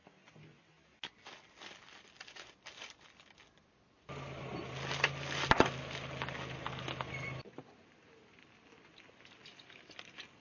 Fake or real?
real